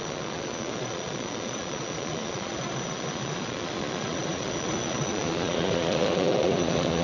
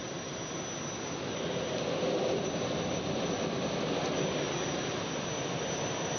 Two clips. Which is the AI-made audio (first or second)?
first